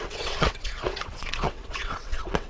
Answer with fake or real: fake